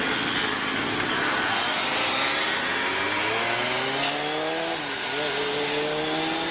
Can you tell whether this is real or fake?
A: real